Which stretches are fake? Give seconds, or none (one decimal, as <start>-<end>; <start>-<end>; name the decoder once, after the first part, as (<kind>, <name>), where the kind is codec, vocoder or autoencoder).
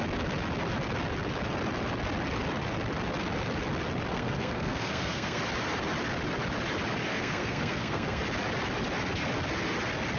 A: 4.1-5.4 (codec, SNAC); 7.1-8.2